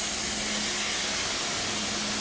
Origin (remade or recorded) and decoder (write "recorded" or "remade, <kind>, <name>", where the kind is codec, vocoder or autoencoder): recorded